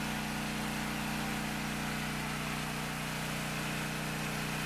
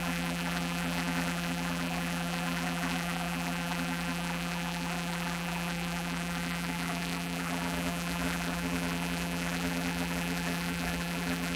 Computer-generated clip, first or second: second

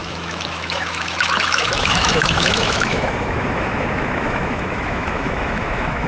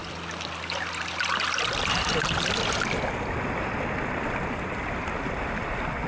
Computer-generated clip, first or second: first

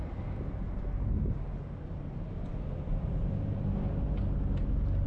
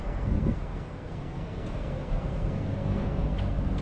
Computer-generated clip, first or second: second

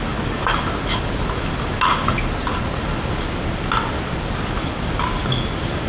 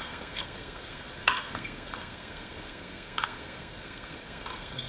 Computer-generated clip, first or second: second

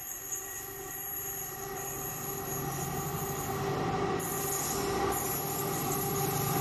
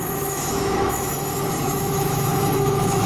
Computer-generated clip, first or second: second